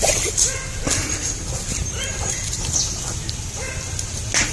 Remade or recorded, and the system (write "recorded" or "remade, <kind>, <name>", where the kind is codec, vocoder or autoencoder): recorded